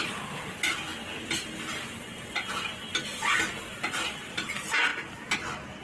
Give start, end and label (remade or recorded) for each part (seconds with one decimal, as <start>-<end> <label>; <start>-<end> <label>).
0.0-5.8 recorded